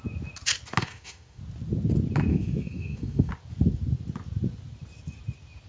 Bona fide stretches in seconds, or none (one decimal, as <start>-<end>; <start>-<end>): 0.0-0.8; 1.4-2.3; 3.3-5.7